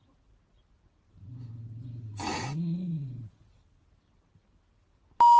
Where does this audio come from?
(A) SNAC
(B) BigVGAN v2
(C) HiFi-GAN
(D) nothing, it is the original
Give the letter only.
D